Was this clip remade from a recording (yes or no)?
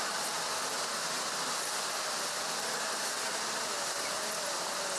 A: no